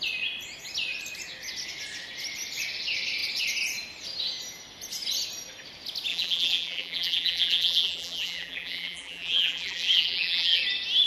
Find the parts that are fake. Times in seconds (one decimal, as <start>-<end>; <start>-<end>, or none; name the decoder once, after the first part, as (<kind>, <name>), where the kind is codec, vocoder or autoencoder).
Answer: 6.1-10.6 (vocoder, BigVGAN v2)